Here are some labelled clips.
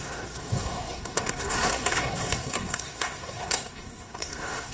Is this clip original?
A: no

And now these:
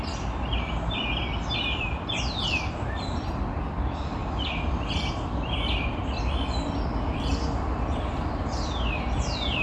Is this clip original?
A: yes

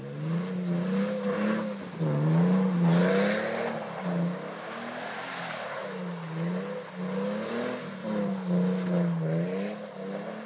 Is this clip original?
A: yes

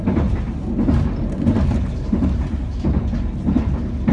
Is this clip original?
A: yes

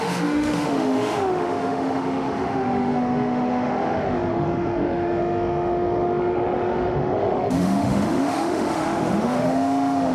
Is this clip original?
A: no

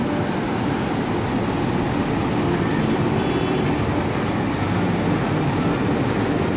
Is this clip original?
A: yes